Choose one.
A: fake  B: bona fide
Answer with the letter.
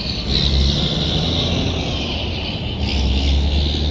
B